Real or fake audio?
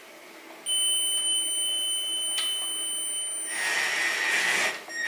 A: real